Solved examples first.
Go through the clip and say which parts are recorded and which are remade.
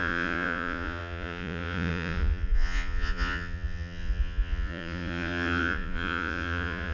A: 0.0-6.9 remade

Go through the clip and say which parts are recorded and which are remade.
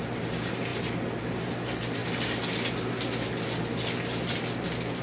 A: 0.0-5.0 recorded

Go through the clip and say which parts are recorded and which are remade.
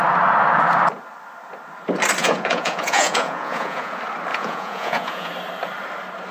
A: 0.0-2.2 recorded; 2.2-3.9 remade; 3.9-4.3 recorded; 4.3-5.3 remade; 5.3-6.3 recorded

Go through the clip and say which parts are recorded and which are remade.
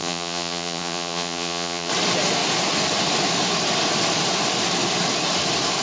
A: 0.0-1.9 remade; 1.9-5.8 recorded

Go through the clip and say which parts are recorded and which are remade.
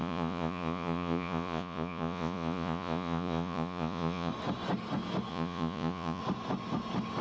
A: 0.0-4.3 remade; 4.3-5.3 recorded; 5.3-6.2 remade; 6.2-7.2 recorded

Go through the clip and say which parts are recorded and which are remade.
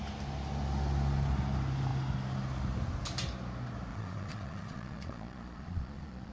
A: 0.0-3.9 recorded; 3.9-6.3 remade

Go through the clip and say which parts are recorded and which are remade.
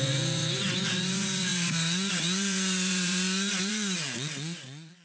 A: 0.0-5.0 remade